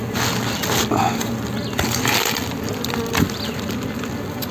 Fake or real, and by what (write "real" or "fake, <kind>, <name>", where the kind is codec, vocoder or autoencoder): real